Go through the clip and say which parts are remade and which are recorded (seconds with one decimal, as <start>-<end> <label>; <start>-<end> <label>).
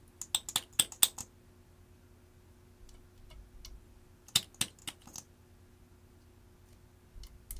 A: 0.0-7.6 recorded